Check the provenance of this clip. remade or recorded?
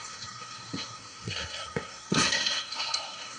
remade